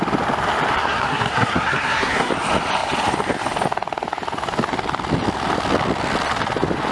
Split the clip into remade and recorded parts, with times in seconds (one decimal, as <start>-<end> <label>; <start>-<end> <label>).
0.0-0.8 recorded; 0.8-2.3 remade; 2.3-6.9 recorded